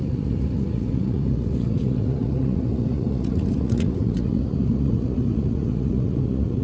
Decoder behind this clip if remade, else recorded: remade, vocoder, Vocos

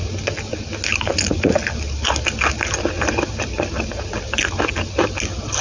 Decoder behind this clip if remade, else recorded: recorded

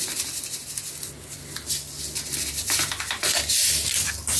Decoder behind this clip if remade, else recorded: recorded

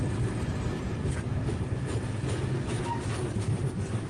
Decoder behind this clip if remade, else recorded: recorded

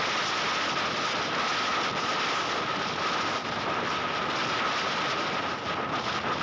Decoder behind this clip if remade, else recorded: recorded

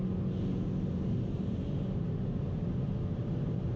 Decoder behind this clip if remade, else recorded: recorded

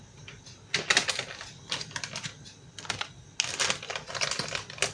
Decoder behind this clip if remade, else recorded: recorded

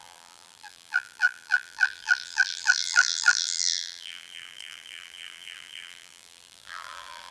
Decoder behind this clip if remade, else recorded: remade, vocoder, BigVGAN v2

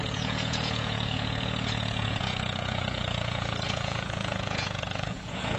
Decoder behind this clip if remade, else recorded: remade, vocoder, Vocos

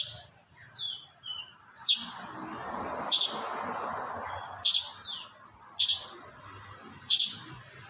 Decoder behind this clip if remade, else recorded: recorded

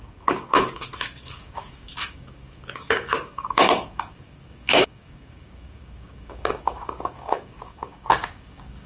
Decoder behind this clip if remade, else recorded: remade, codec, DAC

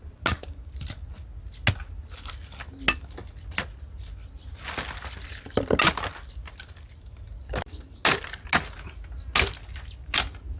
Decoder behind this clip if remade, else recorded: recorded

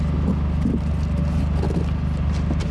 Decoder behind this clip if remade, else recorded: recorded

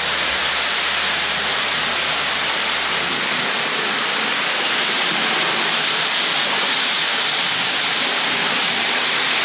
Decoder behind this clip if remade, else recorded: recorded